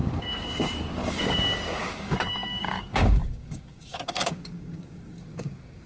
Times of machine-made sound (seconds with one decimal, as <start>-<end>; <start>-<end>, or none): 0.0-5.9